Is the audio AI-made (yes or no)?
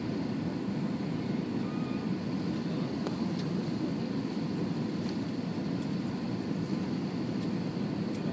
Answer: no